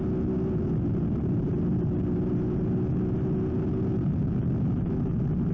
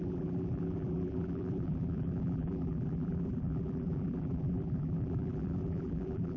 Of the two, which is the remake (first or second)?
second